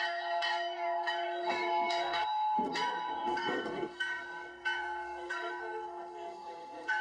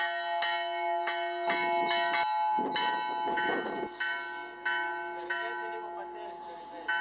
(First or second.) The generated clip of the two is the first